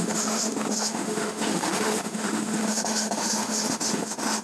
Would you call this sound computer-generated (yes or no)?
yes